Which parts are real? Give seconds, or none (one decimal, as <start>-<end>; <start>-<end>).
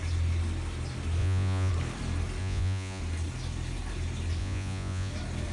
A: 0.0-1.2; 1.7-2.4; 3.0-4.4; 5.1-5.5